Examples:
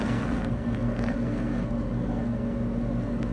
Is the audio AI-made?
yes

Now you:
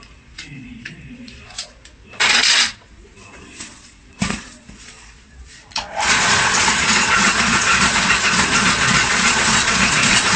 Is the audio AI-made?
yes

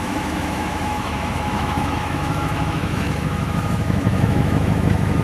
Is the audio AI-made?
yes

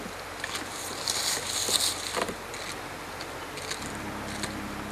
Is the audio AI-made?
no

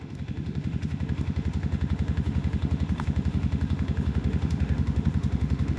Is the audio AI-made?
yes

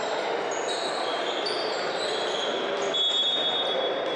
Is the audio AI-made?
no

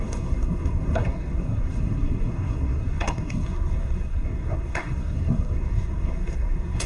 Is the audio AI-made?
yes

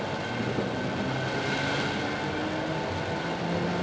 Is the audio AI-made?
no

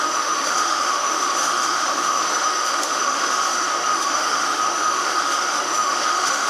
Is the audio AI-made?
yes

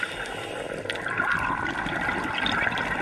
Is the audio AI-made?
no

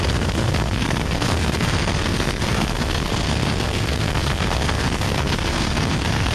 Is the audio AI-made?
yes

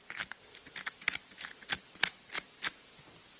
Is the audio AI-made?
no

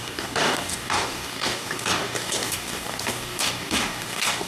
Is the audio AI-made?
yes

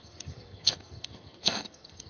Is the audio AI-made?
yes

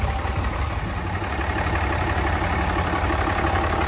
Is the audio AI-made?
no